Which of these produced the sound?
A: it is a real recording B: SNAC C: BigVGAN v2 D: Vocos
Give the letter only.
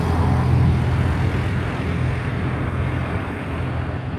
A